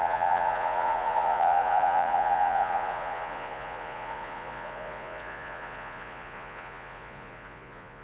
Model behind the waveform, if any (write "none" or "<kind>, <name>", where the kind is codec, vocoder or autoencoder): vocoder, Vocos